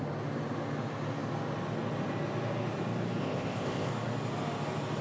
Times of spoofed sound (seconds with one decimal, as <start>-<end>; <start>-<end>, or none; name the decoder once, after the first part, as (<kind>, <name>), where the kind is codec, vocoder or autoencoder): 3.2-3.9 (codec, ZipCodec)

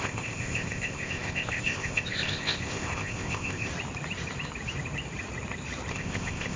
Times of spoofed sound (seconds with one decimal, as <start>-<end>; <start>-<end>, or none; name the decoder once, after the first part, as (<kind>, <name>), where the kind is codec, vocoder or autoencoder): 0.0-3.7 (codec, ZipCodec); 5.9-6.6

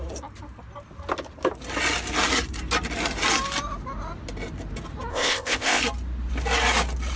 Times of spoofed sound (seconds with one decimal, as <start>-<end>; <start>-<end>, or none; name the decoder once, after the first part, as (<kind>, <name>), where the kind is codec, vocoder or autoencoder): 5.1-5.8 (codec, ZipCodec)

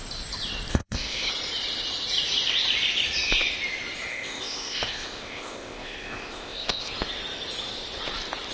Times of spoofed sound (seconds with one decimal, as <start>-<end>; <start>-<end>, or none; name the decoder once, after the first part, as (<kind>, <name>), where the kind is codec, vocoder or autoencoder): 0.7-1.3 (codec, ZipCodec); 4.1-6.9

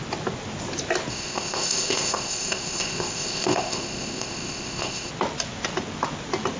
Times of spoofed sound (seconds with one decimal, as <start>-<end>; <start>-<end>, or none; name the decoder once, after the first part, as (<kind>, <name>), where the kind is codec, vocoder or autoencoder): 1.1-5.1 (codec, ZipCodec)

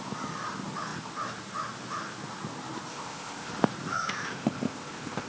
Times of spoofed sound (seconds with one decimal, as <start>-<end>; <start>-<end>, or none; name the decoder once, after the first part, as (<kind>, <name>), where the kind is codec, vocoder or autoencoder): 2.9-3.5 (codec, ZipCodec); 3.9-5.3